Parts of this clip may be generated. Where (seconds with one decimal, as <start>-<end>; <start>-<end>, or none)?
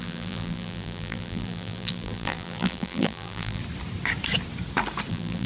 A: 0.0-3.6; 5.1-5.5